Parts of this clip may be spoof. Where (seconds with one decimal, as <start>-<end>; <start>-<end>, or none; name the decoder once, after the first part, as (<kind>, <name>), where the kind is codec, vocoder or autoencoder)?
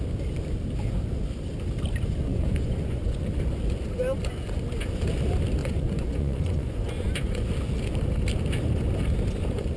2.1-3.3 (vocoder, Vocos); 5.6-7.5